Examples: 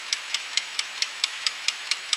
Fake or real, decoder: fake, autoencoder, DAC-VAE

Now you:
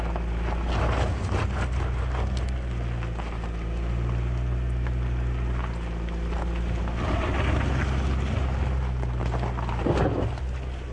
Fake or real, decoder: real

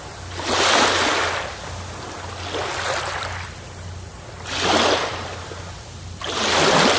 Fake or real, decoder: real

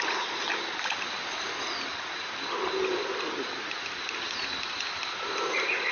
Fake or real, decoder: real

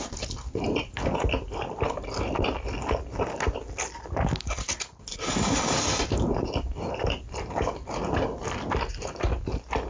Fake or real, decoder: real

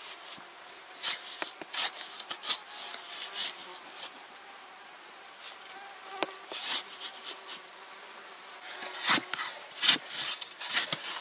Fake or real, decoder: real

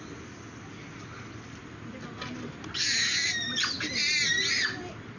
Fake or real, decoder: real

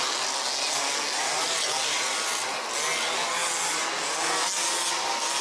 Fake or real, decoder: real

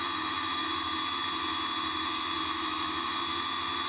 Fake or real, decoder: fake, autoencoder, DAC-VAE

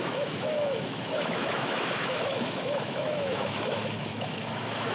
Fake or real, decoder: fake, autoencoder, DAC-VAE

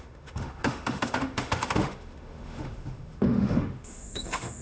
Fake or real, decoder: fake, autoencoder, DAC-VAE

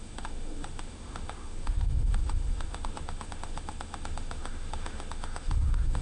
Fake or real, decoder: fake, autoencoder, DAC-VAE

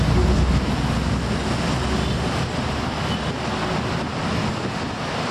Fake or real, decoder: real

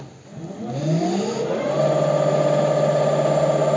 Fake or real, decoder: real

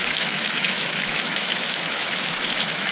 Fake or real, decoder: fake, autoencoder, DAC-VAE